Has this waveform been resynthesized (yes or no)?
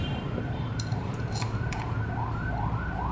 yes